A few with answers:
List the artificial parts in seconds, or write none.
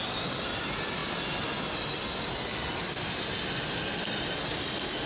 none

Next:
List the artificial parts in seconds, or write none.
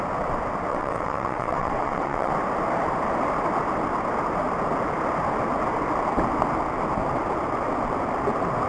0.7-2.3 (vocoder, WaveNeXt)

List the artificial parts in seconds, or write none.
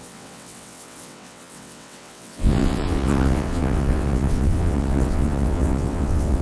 0.0-6.4 (vocoder, WaveNeXt)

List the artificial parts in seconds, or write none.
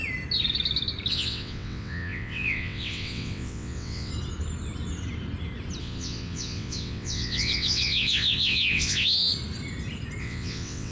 1.1-4.1 (vocoder, WaveNeXt); 5.8-9.3; 10.2-10.9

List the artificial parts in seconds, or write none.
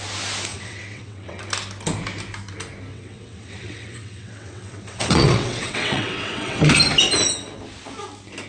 0.5-1.4 (vocoder, WaveNeXt); 2.9-6.6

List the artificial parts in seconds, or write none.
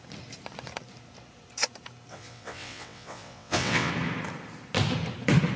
2.1-3.9 (vocoder, WaveNeXt)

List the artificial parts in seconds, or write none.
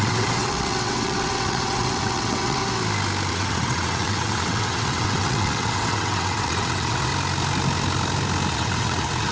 0.0-2.6 (vocoder, WaveNeXt); 3.3-7.1; 8.5-9.3